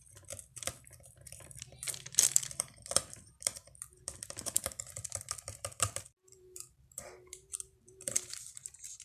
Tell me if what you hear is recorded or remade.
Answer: remade